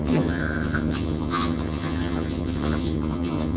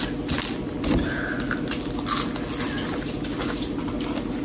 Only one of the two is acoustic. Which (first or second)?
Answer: second